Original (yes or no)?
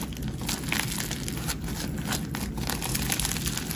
yes